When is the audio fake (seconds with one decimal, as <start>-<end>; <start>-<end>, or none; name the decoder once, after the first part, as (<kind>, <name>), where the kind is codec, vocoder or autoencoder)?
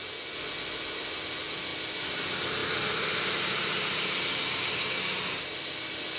4.4-5.1 (codec, DAC)